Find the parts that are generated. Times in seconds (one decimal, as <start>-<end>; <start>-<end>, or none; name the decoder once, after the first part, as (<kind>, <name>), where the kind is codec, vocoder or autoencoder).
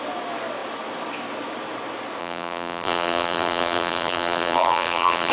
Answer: 2.2-5.3 (vocoder, BigVGAN v2)